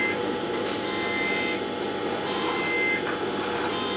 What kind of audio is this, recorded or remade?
recorded